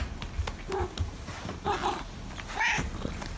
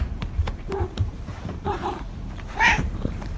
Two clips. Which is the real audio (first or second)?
first